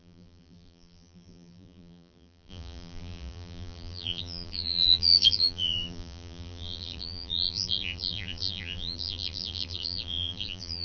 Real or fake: fake